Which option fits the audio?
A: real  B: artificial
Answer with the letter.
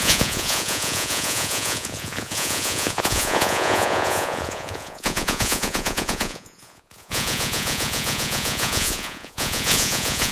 B